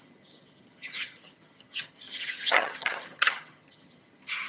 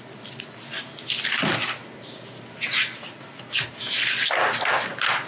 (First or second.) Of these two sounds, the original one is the second